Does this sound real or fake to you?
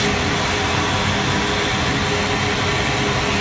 real